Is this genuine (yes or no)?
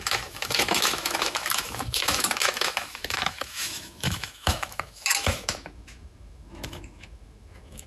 no